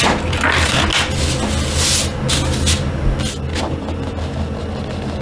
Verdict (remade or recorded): recorded